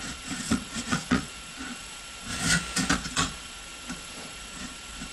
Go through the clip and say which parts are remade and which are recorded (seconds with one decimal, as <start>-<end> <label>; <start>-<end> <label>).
0.0-2.3 remade; 2.3-2.9 recorded; 2.9-5.1 remade